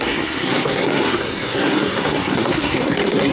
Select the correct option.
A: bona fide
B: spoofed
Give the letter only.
B